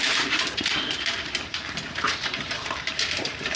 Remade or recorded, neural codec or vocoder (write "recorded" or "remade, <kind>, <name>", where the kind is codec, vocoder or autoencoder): remade, vocoder, BigVGAN v2